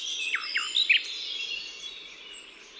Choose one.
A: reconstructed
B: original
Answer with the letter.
B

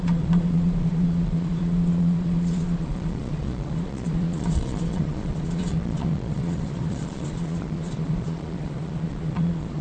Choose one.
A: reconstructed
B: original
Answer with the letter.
A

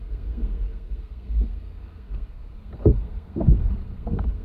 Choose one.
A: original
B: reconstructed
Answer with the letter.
B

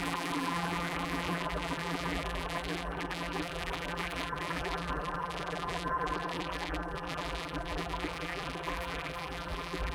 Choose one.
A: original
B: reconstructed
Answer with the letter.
B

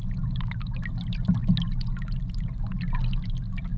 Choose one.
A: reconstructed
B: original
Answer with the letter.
B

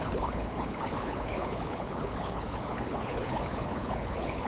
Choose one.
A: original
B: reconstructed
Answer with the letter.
B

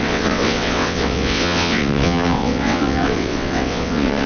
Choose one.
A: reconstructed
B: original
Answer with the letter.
A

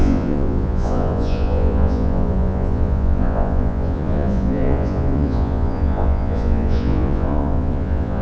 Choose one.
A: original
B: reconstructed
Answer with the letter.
B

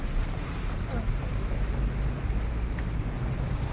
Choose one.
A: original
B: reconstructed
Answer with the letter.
A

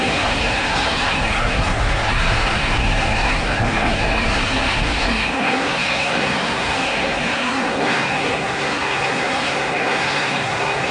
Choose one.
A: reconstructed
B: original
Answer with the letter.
A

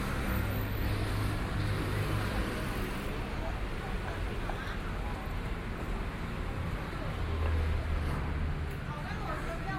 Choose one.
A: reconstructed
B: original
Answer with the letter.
B